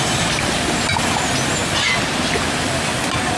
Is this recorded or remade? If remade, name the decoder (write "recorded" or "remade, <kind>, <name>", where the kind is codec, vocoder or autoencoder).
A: recorded